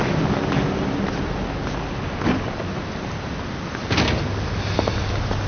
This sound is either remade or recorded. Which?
recorded